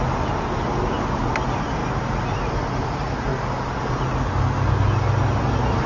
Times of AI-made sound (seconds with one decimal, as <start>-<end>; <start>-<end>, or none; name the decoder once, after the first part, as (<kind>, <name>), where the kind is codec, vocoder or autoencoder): none